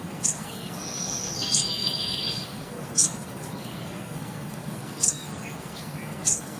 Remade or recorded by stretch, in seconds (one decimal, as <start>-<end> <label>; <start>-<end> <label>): 0.0-6.6 remade

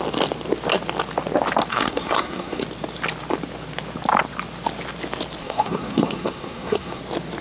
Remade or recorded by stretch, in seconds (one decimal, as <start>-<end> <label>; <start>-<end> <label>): 0.0-1.7 recorded; 1.7-2.6 remade; 2.6-5.4 recorded; 5.4-7.0 remade; 7.0-7.4 recorded

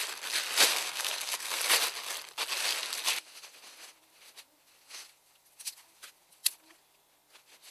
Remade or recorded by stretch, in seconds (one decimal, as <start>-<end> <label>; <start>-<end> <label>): 0.0-0.7 recorded; 0.7-1.6 remade; 1.6-7.7 recorded

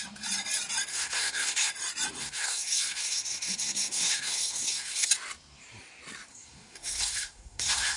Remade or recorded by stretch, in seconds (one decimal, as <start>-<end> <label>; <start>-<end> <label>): 0.0-0.9 recorded; 0.9-1.7 remade; 1.7-2.2 recorded; 2.2-5.1 remade; 5.1-6.3 recorded; 6.3-8.0 remade

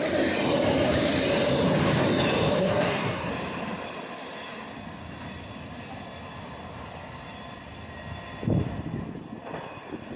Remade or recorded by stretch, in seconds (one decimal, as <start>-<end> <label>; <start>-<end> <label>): 0.0-2.6 recorded; 2.6-3.3 remade; 3.3-10.2 recorded

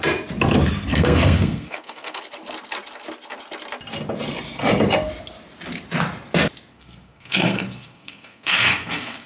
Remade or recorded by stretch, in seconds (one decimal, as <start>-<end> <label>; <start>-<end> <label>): 0.0-0.9 recorded; 0.9-2.2 remade; 2.2-6.7 recorded; 6.7-9.3 remade

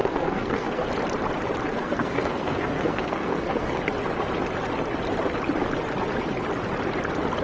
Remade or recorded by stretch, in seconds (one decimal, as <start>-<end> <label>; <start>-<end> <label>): 0.0-0.9 remade; 0.9-1.7 recorded; 1.7-3.8 remade; 3.8-7.4 recorded

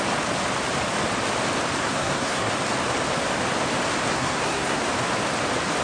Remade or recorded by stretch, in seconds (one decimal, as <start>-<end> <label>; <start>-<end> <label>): 0.0-1.8 recorded; 1.8-2.5 remade; 2.5-4.1 recorded; 4.1-4.8 remade; 4.8-5.8 recorded